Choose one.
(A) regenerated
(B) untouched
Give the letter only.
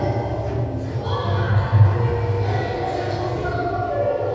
B